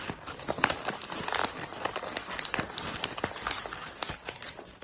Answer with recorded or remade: recorded